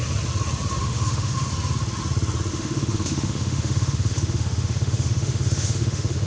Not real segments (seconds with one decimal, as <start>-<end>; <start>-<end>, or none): 0.8-1.5; 2.5-6.3